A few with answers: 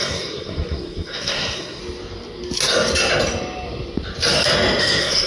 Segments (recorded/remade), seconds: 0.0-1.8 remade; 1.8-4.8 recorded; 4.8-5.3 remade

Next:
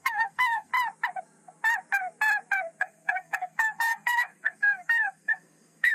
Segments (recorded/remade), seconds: 0.0-0.7 remade; 0.7-2.8 recorded; 2.8-5.9 remade